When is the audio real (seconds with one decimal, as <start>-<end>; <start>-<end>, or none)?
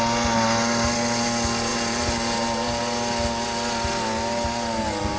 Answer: 0.0-1.7; 2.8-5.2